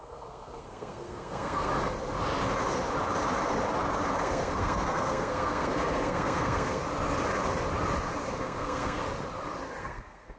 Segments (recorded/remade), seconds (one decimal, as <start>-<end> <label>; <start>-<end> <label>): 0.0-1.7 remade; 1.7-4.2 recorded; 4.2-6.8 remade; 6.8-8.3 recorded; 8.3-9.0 remade; 9.0-9.8 recorded; 9.8-10.4 remade